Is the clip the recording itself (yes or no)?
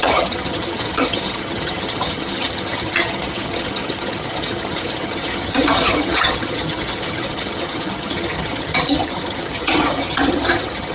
no